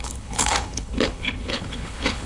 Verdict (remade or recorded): remade